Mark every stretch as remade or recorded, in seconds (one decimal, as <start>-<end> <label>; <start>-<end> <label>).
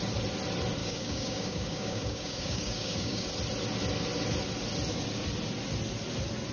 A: 0.0-0.8 recorded; 0.8-3.3 remade; 3.3-6.5 recorded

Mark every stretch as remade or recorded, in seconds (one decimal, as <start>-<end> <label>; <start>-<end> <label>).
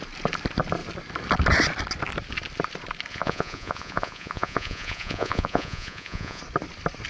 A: 0.0-3.1 recorded; 3.1-6.4 remade; 6.4-7.1 recorded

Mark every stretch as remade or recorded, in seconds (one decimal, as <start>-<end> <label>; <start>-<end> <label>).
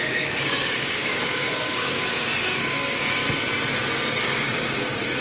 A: 0.0-3.2 remade; 3.2-4.2 recorded; 4.2-5.2 remade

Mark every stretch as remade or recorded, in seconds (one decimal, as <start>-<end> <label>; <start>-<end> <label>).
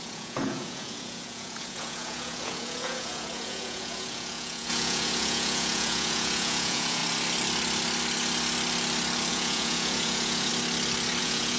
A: 0.0-7.0 remade; 7.0-9.3 recorded; 9.3-10.5 remade; 10.5-11.2 recorded; 11.2-11.6 remade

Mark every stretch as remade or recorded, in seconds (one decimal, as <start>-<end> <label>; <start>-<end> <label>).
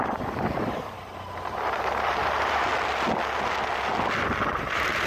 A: 0.0-2.7 remade; 2.7-4.6 recorded; 4.6-5.1 remade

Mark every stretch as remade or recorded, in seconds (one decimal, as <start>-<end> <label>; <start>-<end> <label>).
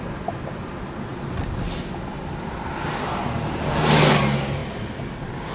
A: 0.0-1.1 recorded; 1.1-2.7 remade; 2.7-5.5 recorded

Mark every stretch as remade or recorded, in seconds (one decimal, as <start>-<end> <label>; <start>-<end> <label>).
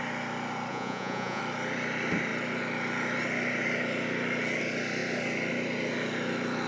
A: 0.0-0.7 recorded; 0.7-1.4 remade; 1.4-6.7 recorded